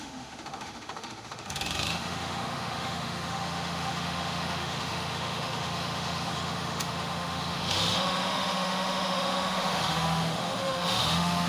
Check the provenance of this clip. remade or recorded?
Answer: remade